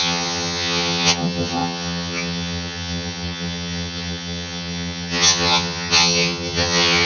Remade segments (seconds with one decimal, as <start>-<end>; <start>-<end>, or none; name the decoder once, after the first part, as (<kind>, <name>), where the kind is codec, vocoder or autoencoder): 0.0-7.1 (vocoder, HiFi-GAN)